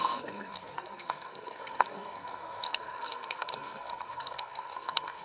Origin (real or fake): fake